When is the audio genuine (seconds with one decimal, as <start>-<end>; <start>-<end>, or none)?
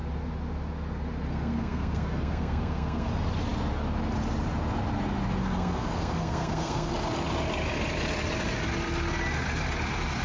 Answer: 0.0-1.3; 3.1-5.4; 6.9-10.2